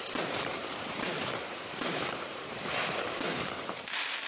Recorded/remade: remade